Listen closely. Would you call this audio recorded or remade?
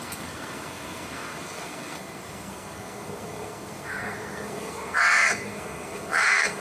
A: remade